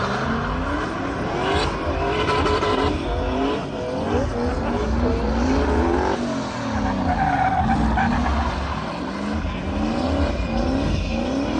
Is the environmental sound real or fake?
real